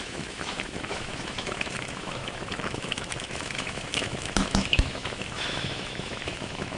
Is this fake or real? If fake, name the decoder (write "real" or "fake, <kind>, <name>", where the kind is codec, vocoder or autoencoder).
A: fake, autoencoder, DAC-VAE